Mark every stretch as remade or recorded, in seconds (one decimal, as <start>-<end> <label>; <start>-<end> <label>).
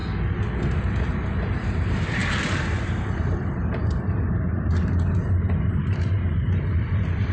0.0-0.9 recorded; 0.9-7.3 remade